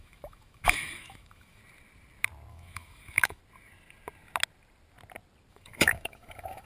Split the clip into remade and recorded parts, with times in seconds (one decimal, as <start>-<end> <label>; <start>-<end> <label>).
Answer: 0.0-1.6 remade; 1.6-2.5 recorded; 2.5-3.4 remade; 3.4-5.5 recorded; 5.5-6.7 remade